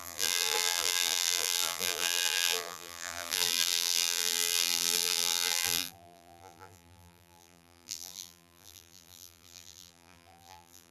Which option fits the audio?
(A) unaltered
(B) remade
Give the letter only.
B